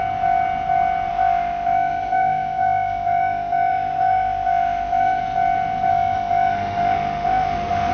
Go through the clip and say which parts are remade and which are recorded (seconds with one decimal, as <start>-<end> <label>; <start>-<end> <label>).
0.0-1.1 recorded; 1.1-5.2 remade; 5.2-5.9 recorded; 5.9-7.9 remade